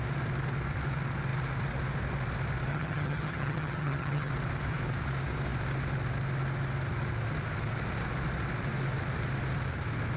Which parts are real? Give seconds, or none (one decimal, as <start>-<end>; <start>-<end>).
0.0-2.7; 4.3-10.2